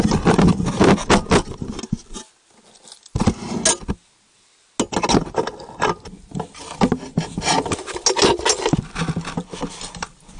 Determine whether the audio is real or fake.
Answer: real